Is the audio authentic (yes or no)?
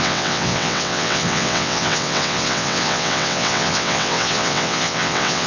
no